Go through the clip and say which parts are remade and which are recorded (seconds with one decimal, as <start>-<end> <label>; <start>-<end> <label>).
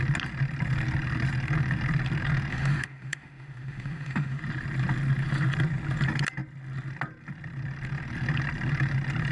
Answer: 0.0-2.5 recorded; 2.5-4.4 remade; 4.4-9.3 recorded